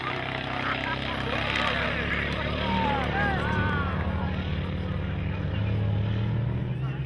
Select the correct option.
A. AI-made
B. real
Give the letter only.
B